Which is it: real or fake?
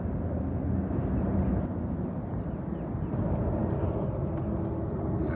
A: real